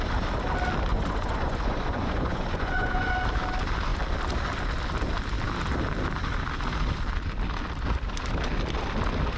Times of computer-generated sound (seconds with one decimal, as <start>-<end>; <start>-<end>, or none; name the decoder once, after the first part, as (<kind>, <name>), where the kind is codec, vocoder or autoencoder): 0.9-3.1 (vocoder, Vocos)